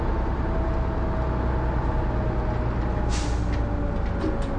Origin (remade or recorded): recorded